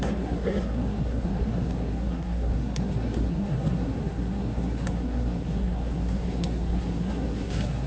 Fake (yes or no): yes